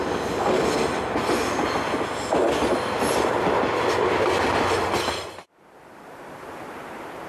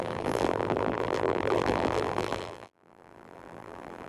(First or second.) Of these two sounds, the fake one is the second